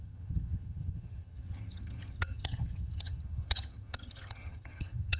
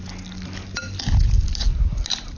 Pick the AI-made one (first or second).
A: first